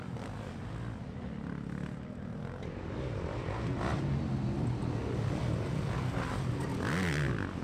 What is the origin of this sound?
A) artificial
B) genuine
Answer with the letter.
B